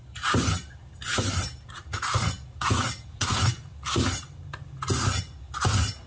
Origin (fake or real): real